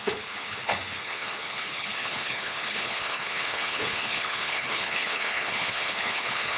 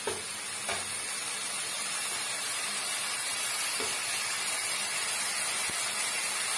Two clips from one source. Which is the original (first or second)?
second